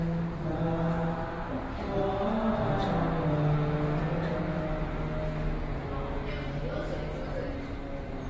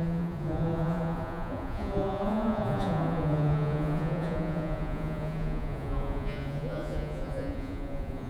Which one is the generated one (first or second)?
second